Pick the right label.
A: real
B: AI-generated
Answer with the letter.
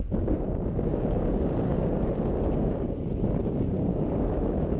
B